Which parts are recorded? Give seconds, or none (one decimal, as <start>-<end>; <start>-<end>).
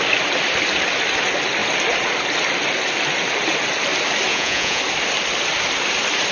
0.0-4.3; 4.8-6.3